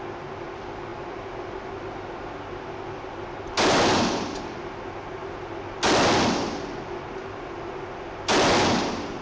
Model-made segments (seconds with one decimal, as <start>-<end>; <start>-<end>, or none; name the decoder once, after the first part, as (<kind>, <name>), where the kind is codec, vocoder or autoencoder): none